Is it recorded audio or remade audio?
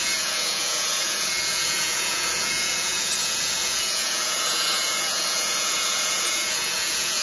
remade